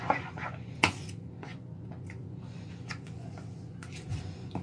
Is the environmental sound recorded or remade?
remade